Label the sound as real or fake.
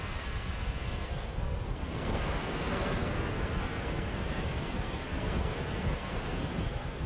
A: fake